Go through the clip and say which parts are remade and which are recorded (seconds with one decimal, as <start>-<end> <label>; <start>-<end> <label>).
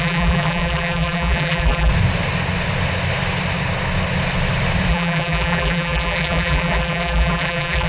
0.0-1.9 remade; 1.9-4.9 recorded; 4.9-7.9 remade